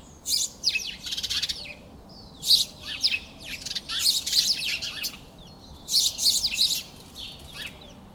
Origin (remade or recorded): remade